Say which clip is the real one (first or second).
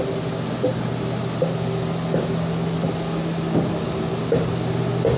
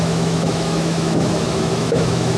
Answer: first